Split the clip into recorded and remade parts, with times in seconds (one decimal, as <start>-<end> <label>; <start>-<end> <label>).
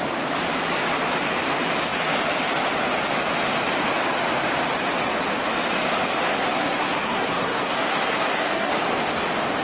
0.0-6.3 recorded; 6.3-8.7 remade; 8.7-9.6 recorded